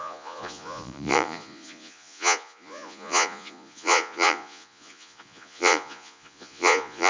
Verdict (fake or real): fake